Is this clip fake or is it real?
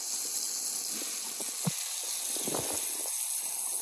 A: real